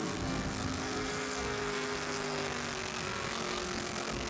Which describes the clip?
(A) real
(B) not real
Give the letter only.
B